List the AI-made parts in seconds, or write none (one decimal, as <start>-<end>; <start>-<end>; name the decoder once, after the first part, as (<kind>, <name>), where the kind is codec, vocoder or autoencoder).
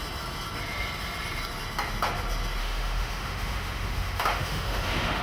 2.6-5.2 (autoencoder, DAC-VAE)